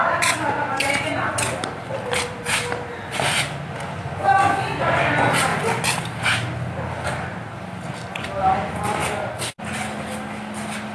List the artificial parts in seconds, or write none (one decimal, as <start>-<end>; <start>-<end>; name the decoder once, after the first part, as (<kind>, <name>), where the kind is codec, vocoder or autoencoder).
9.0-9.7 (vocoder, BigVGAN v2)